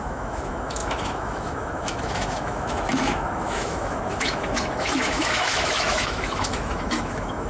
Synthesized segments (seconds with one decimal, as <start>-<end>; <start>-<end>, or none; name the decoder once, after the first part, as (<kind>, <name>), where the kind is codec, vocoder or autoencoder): 0.0-7.5 (autoencoder, DAC-VAE)